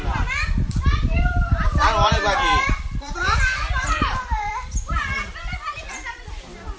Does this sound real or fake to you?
fake